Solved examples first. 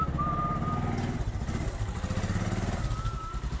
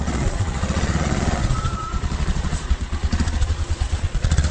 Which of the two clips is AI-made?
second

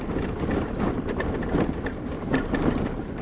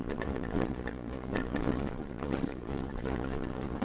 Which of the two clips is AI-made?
second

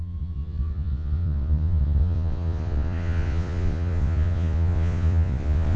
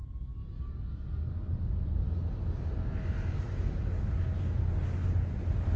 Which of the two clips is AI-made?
first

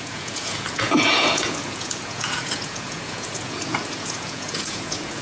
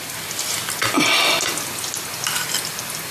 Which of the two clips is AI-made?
first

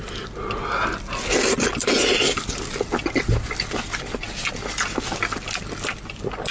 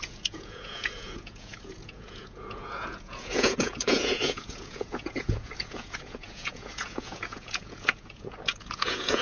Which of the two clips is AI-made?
second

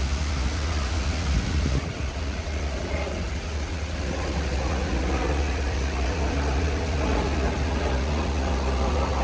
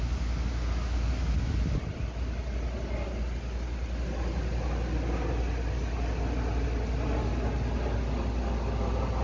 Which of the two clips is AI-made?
first